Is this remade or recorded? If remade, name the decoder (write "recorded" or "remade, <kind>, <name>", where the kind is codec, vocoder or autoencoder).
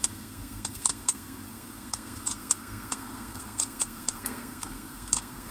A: remade, codec, SNAC